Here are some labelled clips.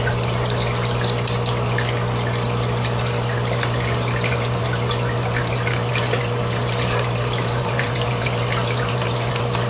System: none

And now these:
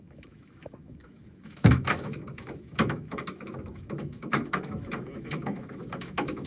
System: autoencoder, DAC-VAE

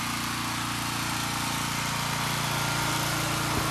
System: none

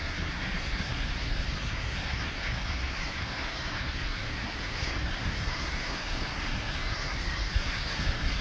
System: codec, SNAC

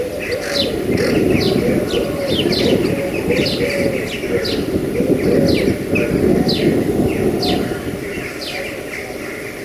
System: none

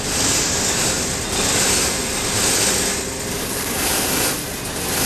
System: none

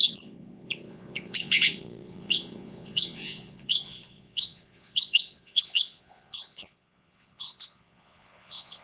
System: vocoder, Vocos